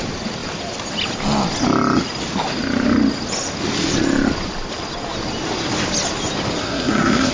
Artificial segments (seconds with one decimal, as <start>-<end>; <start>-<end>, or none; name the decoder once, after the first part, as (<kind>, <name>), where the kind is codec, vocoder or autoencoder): 6.6-7.3 (codec, SNAC)